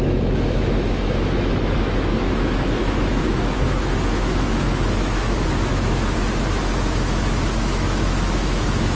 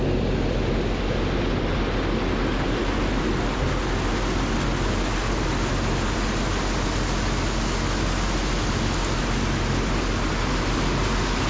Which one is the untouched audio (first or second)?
second